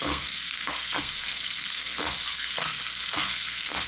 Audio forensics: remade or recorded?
remade